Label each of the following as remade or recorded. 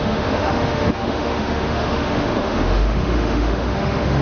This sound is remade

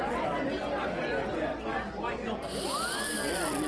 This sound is recorded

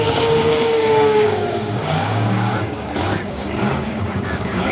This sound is remade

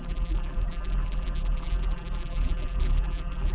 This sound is remade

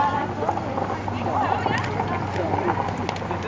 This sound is recorded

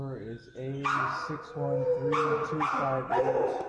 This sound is recorded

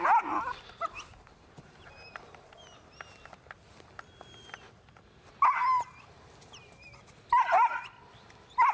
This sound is recorded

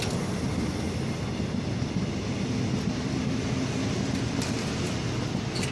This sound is recorded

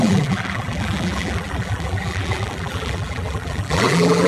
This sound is remade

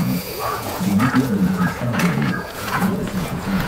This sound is remade